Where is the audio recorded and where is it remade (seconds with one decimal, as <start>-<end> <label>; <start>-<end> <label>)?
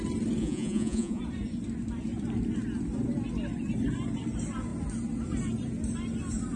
0.0-0.4 recorded; 0.4-1.2 remade; 1.2-6.6 recorded